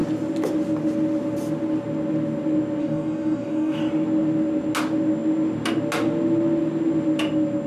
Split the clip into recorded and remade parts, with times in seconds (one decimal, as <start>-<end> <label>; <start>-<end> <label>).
0.0-2.8 recorded; 2.8-3.8 remade; 3.8-7.7 recorded